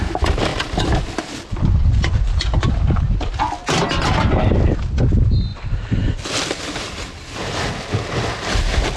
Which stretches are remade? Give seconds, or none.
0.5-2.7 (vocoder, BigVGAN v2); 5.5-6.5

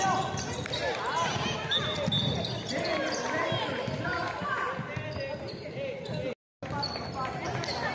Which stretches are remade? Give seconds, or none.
none

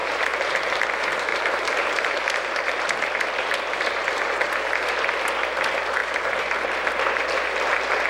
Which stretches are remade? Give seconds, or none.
0.0-0.6 (vocoder, BigVGAN v2); 1.3-1.9; 6.0-6.9

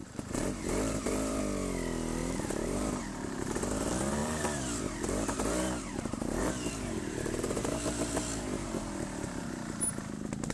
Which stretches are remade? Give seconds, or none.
0.0-1.4 (vocoder, BigVGAN v2); 2.2-3.6; 4.2-9.4